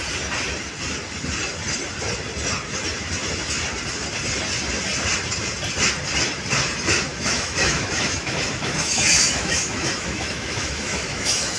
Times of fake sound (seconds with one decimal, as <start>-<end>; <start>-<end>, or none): 7.1-11.6